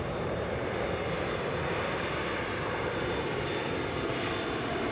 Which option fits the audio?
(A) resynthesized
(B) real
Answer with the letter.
A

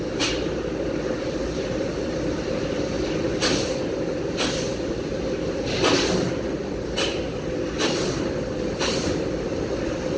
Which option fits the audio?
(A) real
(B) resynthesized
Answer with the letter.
A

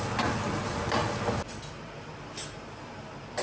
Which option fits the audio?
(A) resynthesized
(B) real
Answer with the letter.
B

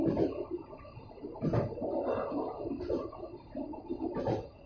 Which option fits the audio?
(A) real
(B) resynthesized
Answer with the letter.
A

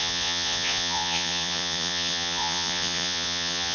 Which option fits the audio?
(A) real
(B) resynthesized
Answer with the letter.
B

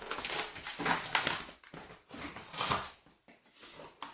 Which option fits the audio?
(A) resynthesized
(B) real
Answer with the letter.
B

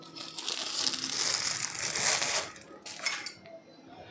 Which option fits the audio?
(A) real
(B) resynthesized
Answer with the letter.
A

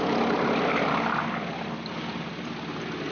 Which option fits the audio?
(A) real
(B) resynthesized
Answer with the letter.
A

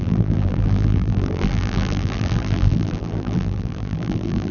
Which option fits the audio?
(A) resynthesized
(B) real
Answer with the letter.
A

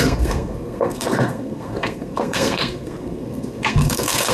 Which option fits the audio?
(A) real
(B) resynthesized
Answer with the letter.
B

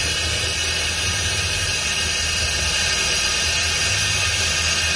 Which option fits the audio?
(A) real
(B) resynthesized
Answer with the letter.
A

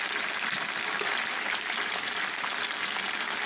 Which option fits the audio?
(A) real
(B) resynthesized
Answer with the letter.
A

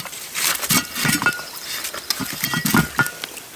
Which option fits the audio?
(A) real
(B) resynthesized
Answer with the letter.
A